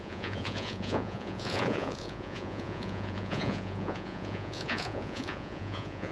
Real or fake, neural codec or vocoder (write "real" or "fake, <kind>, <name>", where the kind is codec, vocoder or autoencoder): fake, vocoder, Vocos